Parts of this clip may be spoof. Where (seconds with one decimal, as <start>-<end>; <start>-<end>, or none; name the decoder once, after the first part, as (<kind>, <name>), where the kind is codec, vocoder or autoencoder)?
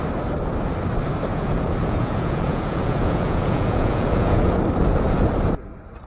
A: 1.3-4.6 (vocoder, Vocos)